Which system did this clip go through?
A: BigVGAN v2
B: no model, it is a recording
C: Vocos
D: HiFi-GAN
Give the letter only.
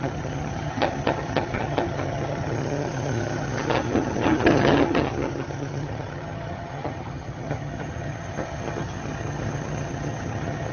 D